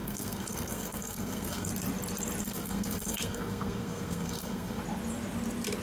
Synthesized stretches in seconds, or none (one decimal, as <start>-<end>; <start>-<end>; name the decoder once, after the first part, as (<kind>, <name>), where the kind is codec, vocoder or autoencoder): 0.0-1.7 (codec, SNAC); 2.4-4.8